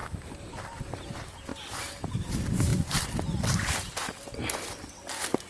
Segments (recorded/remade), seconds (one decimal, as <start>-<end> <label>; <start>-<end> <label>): 0.0-5.5 recorded